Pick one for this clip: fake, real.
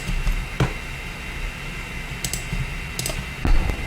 real